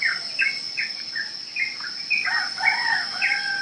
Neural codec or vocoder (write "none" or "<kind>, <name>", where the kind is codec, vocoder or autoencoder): none